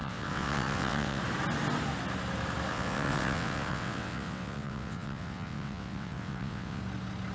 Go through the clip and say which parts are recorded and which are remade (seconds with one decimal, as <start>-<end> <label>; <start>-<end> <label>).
0.0-1.2 remade; 1.2-2.7 recorded; 2.7-6.8 remade; 6.8-7.3 recorded